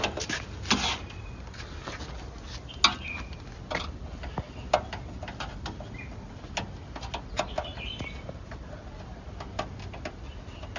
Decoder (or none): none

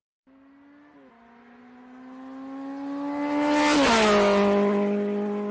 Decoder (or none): none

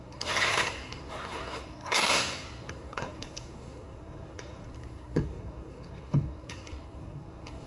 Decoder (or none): codec, SNAC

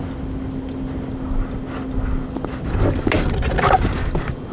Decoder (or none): none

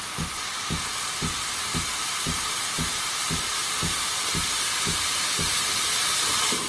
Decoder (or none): none